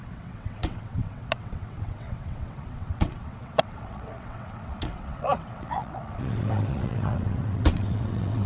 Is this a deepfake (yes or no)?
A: yes